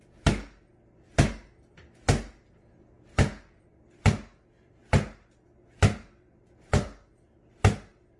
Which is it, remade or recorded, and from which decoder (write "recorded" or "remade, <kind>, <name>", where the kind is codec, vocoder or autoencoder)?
recorded